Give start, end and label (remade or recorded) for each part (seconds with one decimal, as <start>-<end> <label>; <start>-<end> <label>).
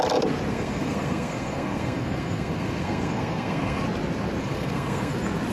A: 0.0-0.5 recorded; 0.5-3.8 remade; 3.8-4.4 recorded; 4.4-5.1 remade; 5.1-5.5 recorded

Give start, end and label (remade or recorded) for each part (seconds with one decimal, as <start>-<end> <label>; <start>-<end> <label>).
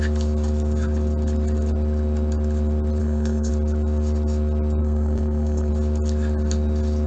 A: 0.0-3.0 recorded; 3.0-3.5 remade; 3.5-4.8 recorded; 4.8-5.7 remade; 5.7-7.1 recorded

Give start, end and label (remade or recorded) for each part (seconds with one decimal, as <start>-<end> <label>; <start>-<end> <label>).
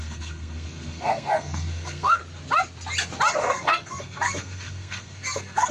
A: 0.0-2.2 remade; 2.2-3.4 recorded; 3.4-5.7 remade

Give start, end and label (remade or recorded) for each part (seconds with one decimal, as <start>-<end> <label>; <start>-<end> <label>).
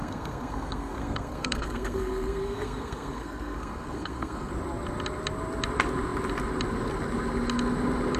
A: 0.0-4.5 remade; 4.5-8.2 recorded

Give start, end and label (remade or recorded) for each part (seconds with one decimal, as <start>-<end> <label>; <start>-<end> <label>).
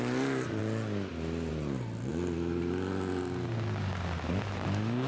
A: 0.0-5.1 recorded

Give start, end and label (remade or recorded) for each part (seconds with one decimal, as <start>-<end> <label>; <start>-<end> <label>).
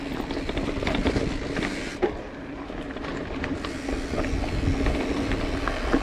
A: 0.0-6.0 recorded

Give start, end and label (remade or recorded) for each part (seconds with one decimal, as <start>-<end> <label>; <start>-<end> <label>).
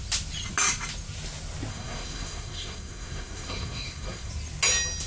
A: 0.0-1.7 recorded; 1.7-4.3 remade; 4.3-5.1 recorded